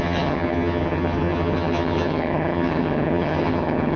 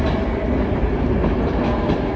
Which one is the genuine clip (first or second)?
second